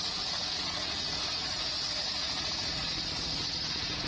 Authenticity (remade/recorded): remade